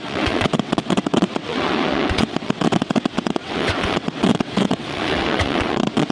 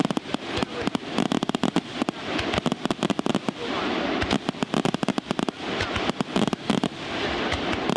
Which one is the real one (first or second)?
second